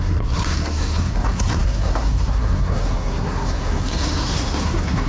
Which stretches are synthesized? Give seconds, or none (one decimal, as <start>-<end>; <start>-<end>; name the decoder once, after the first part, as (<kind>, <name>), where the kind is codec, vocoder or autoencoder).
0.0-5.1 (codec, SNAC)